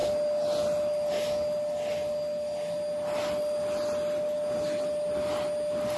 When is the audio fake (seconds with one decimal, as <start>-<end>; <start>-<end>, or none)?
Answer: none